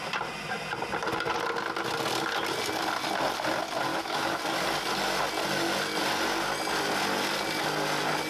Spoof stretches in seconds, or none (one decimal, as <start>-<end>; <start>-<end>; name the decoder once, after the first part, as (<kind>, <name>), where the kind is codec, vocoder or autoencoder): 3.9-4.4 (autoencoder, DAC-VAE)